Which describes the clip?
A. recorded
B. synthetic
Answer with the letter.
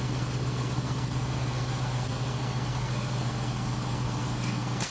B